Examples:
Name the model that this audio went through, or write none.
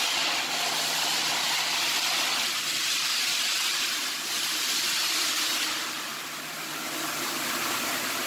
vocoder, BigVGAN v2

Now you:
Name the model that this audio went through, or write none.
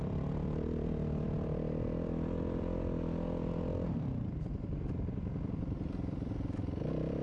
vocoder, BigVGAN v2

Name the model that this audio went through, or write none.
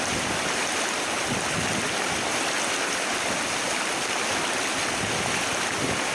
vocoder, BigVGAN v2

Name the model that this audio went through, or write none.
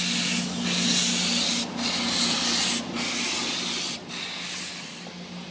none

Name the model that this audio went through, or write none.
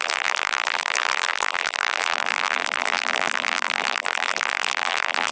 vocoder, BigVGAN v2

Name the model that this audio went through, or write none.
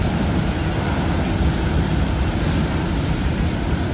none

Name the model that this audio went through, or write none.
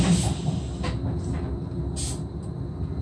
none